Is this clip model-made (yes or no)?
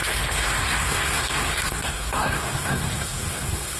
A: yes